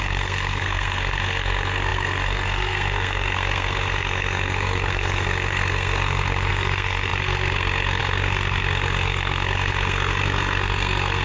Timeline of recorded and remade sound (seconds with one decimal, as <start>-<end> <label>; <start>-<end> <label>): 0.0-11.2 remade